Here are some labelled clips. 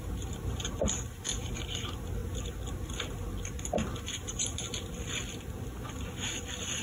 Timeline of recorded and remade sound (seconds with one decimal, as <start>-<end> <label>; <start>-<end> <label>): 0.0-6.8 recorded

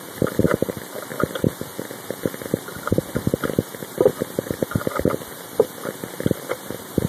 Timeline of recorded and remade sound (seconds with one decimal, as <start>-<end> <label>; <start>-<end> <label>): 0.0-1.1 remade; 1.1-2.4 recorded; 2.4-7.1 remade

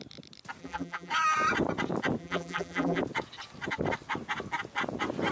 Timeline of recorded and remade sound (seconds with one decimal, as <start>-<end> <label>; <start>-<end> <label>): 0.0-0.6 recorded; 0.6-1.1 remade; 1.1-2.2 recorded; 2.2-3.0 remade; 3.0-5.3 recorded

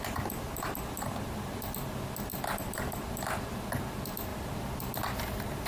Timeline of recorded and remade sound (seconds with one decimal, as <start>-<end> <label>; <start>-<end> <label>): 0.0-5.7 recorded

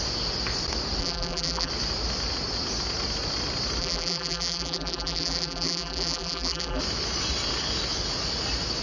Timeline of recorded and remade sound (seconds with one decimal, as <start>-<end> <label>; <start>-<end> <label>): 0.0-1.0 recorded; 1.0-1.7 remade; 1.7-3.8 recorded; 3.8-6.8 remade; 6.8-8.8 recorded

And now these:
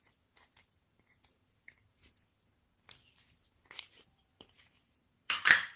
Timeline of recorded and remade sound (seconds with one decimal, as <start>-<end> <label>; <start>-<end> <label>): 0.0-2.0 remade; 2.0-3.8 recorded; 3.8-5.8 remade